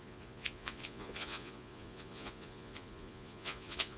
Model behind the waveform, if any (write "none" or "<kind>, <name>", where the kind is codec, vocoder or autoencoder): vocoder, Vocos